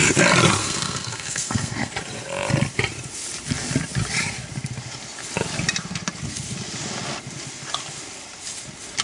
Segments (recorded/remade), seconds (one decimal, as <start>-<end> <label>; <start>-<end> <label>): 0.0-0.6 recorded; 0.6-1.9 remade; 1.9-9.0 recorded